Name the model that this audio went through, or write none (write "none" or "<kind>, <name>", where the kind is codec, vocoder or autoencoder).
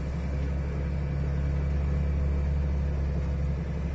none